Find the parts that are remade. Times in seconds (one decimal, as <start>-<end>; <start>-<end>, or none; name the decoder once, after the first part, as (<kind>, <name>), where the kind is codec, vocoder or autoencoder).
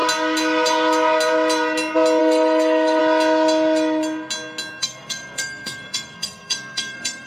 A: 2.2-3.0 (codec, SNAC); 4.8-7.3